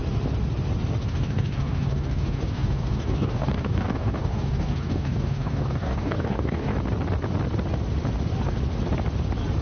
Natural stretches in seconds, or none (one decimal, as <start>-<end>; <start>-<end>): 0.0-1.0; 6.7-9.6